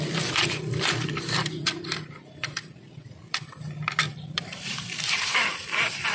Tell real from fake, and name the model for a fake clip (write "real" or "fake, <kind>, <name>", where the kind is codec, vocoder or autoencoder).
fake, vocoder, BigVGAN v2